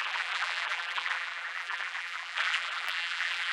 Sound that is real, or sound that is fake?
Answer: fake